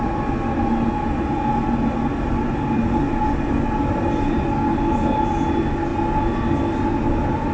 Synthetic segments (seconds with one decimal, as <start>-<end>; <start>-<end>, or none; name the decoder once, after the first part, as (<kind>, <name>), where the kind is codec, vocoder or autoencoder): none